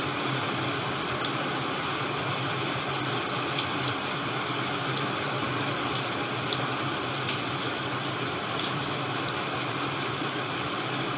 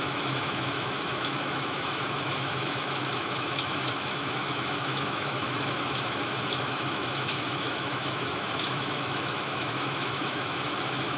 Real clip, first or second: first